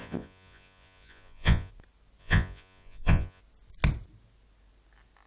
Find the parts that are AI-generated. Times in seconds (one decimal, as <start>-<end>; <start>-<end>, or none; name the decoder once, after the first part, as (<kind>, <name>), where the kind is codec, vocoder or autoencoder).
0.0-1.7 (vocoder, Vocos); 2.2-3.4